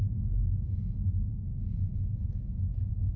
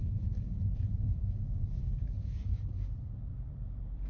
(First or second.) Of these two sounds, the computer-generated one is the second